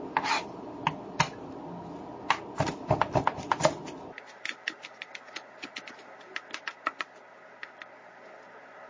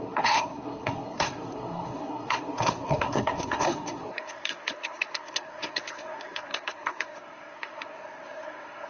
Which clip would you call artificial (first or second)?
second